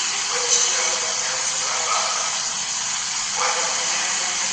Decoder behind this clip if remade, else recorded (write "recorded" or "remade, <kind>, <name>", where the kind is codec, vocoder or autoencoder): recorded